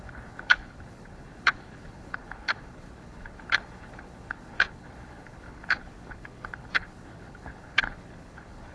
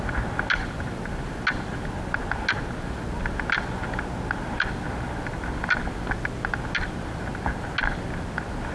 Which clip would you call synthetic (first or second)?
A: first